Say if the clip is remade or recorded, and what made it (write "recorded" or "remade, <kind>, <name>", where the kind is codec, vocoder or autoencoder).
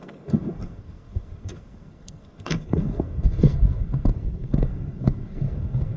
remade, codec, SNAC